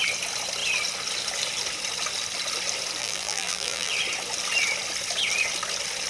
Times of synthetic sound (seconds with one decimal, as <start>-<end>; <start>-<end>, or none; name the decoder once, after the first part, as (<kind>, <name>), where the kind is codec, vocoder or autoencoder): 3.0-3.9 (vocoder, BigVGAN v2)